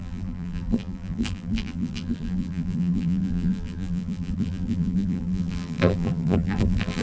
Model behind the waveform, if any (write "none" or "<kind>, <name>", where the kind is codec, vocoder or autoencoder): vocoder, BigVGAN v2